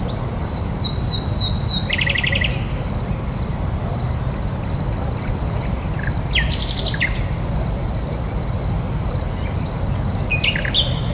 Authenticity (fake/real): real